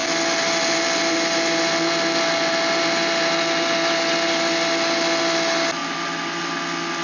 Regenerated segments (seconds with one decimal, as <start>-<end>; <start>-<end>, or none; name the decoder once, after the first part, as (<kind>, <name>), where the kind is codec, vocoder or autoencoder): none